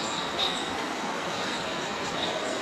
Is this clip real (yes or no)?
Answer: no